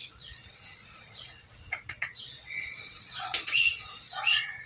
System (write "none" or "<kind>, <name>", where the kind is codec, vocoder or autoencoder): vocoder, Vocos